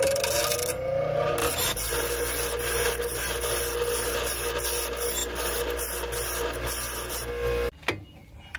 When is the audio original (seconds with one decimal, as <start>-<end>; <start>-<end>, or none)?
0.0-1.4; 1.9-8.6